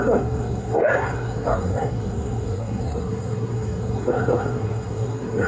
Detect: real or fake fake